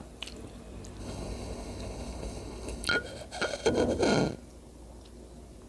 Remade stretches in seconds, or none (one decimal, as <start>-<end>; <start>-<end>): 1.0-2.9